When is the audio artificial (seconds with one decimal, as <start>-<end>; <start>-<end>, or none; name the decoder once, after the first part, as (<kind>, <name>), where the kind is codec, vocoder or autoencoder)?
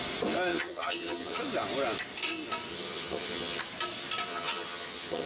0.5-1.4 (vocoder, HiFi-GAN); 2.7-3.6; 4.3-5.3